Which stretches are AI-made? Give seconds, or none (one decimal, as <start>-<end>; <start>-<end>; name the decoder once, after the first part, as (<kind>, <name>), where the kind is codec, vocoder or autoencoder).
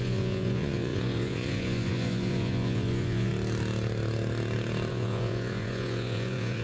0.0-3.3 (vocoder, Vocos); 4.9-6.6